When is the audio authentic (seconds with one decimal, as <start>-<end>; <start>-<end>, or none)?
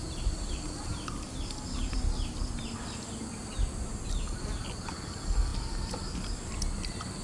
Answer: 0.0-7.2